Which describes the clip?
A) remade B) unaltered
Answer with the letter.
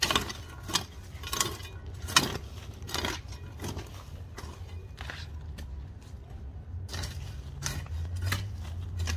B